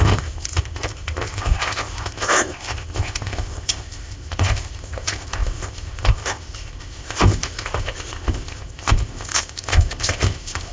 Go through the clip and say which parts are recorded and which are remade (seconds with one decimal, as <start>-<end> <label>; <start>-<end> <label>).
0.0-10.7 remade